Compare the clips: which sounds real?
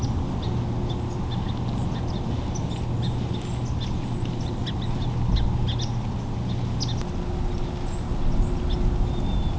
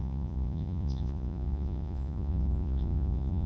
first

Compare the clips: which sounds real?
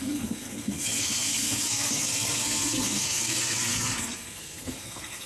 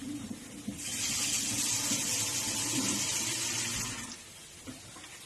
second